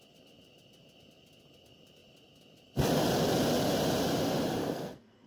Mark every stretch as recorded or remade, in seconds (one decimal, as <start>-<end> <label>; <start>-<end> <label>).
0.0-4.6 recorded; 4.6-5.3 remade